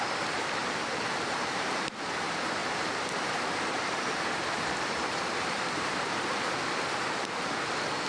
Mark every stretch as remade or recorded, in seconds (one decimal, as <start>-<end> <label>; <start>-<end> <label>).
0.0-0.6 recorded; 0.6-1.8 remade; 1.8-2.6 recorded; 2.6-5.9 remade; 5.9-8.1 recorded